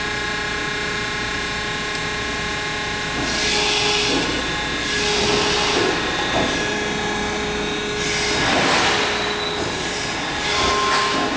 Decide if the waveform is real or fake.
real